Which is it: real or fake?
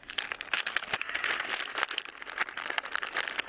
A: real